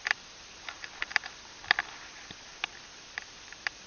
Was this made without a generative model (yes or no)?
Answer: no